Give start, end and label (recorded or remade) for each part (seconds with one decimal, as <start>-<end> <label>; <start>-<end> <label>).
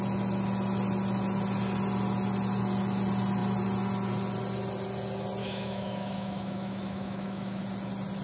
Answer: 0.0-5.4 recorded; 5.4-7.6 remade; 7.6-8.2 recorded